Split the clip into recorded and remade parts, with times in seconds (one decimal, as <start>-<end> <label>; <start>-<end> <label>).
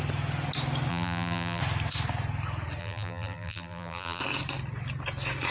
0.0-0.9 recorded; 0.9-1.6 remade; 1.6-2.8 recorded; 2.8-4.2 remade; 4.2-5.5 recorded